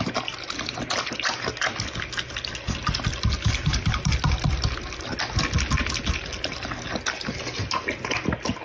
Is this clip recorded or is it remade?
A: recorded